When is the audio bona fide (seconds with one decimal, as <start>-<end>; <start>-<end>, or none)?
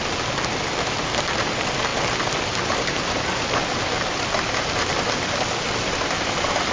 0.0-6.7